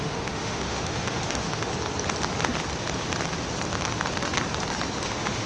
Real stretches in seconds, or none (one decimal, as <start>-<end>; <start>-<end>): 1.7-5.0